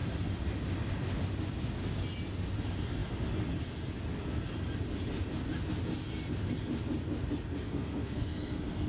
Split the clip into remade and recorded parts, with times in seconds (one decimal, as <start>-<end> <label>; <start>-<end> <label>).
0.0-7.5 recorded; 7.5-8.9 remade